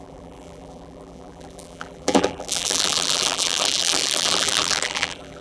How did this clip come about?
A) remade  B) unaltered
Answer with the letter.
A